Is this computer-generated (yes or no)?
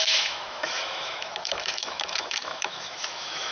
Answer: yes